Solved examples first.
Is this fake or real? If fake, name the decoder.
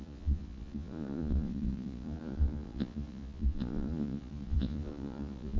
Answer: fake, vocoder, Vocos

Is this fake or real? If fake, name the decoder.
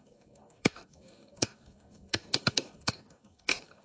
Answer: fake, codec, DAC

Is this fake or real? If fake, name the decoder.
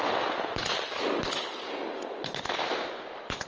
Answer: real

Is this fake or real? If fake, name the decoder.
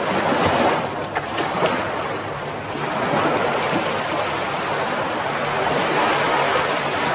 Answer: real